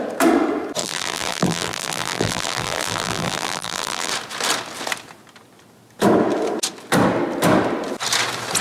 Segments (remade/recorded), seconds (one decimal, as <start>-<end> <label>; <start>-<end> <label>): 0.0-0.8 recorded; 0.8-4.1 remade; 4.1-8.6 recorded